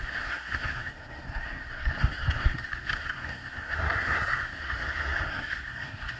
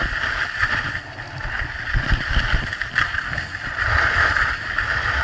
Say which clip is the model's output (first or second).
first